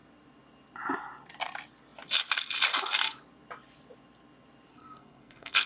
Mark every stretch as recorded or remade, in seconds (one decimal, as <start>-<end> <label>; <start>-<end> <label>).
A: 0.0-4.7 recorded; 4.7-5.7 remade